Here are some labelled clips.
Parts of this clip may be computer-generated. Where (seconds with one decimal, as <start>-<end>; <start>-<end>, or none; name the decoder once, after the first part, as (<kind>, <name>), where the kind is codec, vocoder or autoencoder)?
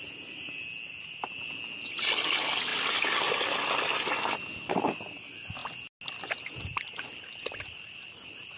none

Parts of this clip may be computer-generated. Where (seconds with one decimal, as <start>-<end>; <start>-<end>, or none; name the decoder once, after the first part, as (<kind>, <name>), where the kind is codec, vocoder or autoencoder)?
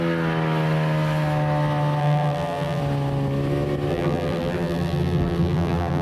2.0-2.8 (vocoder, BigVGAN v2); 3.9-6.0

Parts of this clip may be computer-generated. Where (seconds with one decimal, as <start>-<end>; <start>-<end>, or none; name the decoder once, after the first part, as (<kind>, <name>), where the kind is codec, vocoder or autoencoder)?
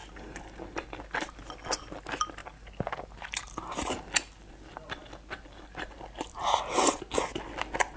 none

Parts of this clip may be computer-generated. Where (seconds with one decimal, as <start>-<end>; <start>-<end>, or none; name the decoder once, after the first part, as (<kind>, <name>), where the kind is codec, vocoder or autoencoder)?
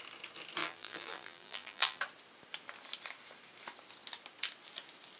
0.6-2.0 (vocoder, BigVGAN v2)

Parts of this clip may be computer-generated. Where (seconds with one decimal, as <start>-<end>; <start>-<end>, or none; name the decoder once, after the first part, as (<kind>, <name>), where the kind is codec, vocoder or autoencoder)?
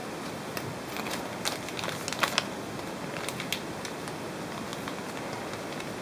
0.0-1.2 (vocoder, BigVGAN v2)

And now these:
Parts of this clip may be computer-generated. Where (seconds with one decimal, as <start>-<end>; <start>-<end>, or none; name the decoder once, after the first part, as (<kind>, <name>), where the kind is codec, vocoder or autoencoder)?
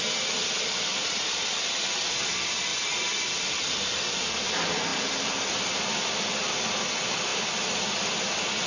none